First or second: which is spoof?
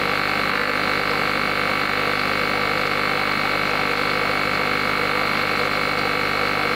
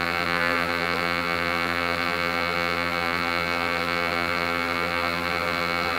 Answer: second